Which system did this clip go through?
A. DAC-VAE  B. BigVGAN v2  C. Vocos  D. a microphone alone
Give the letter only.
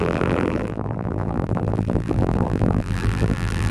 B